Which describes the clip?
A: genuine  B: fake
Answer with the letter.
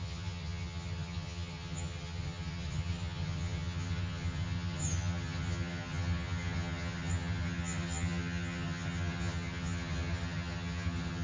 B